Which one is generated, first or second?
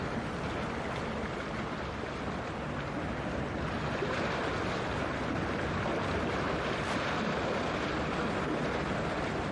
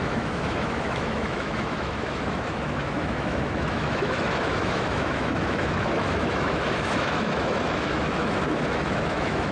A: second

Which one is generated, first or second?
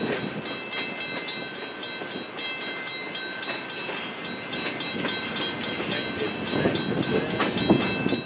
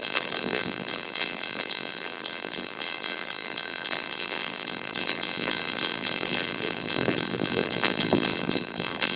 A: second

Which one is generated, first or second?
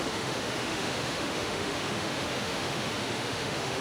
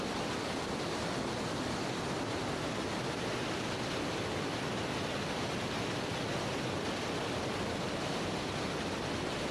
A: first